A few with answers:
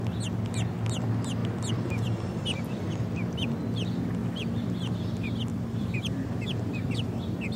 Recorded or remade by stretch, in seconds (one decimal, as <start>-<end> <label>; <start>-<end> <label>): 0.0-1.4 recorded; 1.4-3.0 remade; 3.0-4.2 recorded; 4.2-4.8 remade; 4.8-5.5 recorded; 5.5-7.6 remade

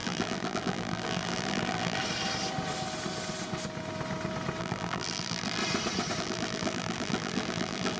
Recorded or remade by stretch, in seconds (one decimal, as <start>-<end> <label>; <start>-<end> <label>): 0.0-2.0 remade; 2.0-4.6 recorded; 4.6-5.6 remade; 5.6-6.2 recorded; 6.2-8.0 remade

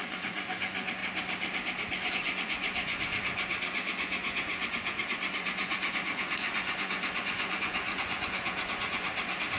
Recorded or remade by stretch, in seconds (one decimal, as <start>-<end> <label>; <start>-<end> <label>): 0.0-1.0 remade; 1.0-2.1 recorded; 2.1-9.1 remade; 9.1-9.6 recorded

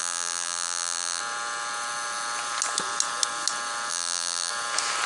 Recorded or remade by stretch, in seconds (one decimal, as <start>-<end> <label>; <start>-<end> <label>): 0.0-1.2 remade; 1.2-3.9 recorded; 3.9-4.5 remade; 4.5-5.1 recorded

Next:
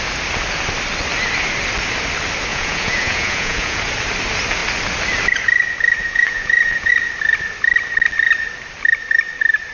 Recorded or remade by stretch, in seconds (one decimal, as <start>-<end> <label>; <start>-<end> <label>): 0.0-2.5 recorded; 2.5-3.8 remade; 3.8-6.0 recorded; 6.0-6.9 remade; 6.9-9.7 recorded

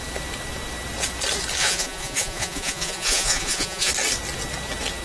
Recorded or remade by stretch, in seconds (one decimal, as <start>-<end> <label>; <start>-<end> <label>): 0.0-1.6 recorded; 1.6-3.9 remade; 3.9-5.0 recorded

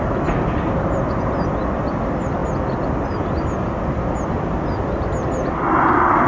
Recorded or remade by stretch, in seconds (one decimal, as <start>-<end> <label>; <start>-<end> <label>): 0.0-6.3 recorded